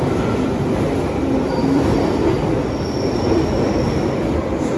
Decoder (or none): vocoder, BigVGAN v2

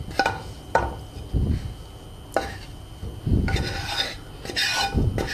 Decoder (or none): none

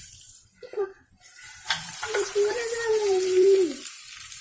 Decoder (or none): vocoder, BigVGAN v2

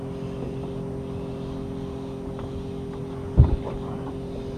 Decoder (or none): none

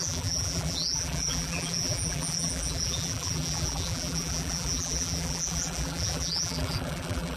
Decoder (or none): vocoder, BigVGAN v2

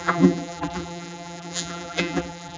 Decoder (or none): vocoder, BigVGAN v2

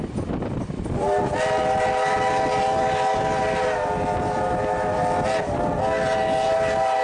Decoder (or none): none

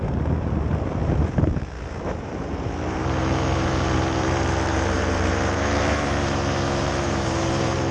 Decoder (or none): vocoder, BigVGAN v2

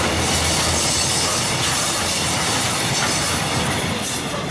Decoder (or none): none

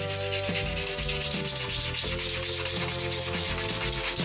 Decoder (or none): none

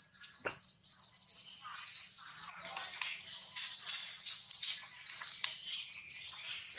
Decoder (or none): none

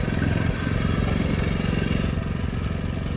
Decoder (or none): none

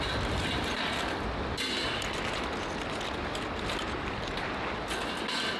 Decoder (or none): none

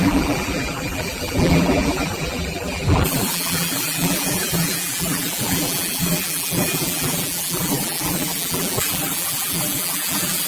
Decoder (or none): vocoder, BigVGAN v2